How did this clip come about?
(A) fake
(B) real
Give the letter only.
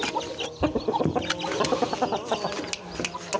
B